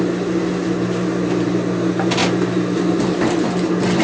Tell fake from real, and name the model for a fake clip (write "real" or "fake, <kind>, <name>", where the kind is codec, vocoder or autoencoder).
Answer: real